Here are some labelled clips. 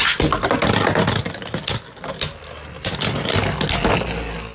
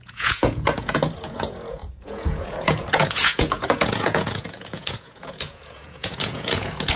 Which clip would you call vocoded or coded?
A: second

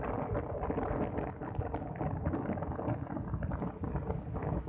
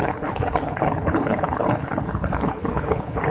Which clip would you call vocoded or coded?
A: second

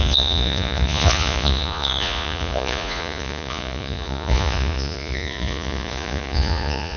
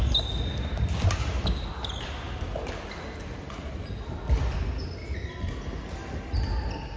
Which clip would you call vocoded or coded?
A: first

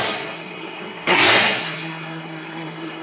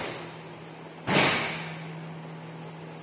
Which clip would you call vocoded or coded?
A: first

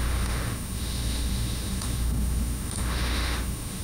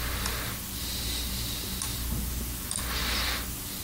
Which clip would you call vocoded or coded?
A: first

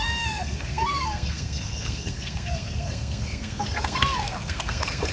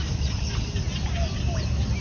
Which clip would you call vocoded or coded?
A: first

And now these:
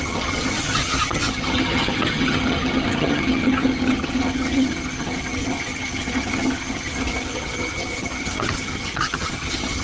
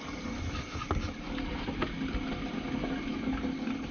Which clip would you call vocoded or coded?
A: first